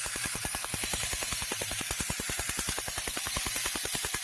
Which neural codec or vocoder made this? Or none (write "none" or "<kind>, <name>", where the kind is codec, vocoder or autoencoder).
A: none